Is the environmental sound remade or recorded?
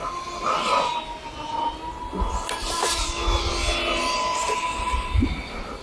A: recorded